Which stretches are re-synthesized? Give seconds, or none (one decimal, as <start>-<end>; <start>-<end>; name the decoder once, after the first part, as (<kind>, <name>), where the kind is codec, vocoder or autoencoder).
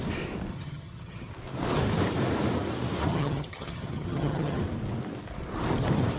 0.5-1.3 (vocoder, HiFi-GAN); 3.1-4.6